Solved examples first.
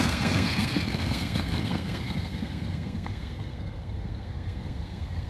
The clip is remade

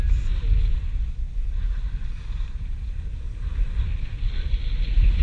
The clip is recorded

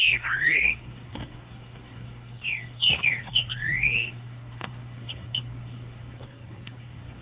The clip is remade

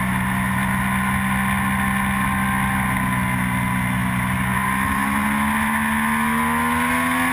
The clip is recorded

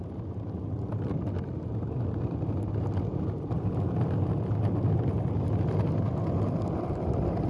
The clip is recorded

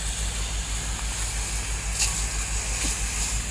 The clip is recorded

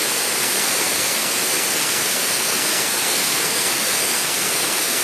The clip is remade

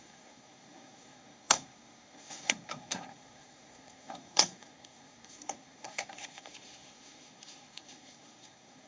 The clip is remade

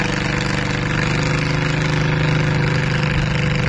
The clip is recorded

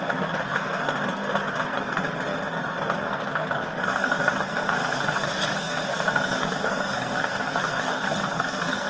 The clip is remade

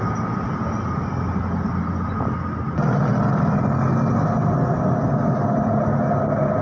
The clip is recorded